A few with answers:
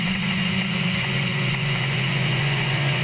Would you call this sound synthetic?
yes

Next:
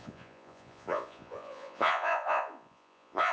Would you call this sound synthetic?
yes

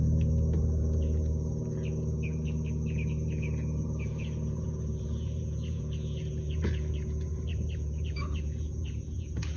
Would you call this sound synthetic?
yes